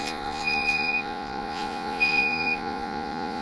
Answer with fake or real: fake